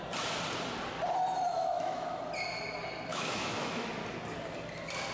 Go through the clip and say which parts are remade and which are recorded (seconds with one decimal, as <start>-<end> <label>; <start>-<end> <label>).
0.0-1.5 recorded; 1.5-2.2 remade; 2.2-3.1 recorded; 3.1-3.9 remade; 3.9-5.1 recorded